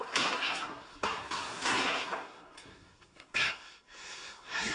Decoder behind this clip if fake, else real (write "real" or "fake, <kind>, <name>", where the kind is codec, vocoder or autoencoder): fake, codec, SNAC